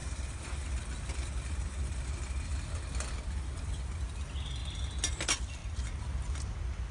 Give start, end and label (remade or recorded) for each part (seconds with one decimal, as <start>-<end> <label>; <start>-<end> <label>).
0.0-0.7 remade; 0.7-6.9 recorded